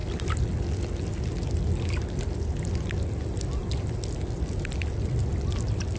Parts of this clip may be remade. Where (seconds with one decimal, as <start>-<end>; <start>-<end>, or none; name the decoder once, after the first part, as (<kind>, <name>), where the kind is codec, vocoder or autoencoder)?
none